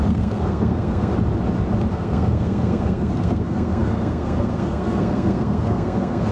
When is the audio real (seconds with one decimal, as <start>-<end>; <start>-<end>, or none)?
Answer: 1.1-1.9